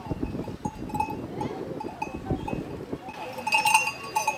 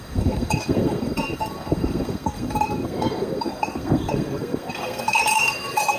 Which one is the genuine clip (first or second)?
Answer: first